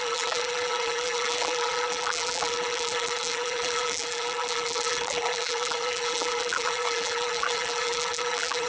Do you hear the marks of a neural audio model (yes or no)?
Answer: yes